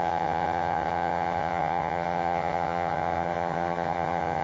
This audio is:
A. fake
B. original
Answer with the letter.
A